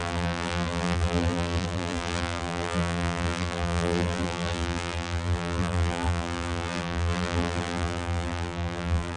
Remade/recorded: remade